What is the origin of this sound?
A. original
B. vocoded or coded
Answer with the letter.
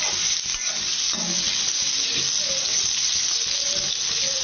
A